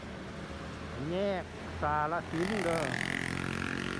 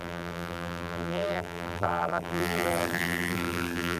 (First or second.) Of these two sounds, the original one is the first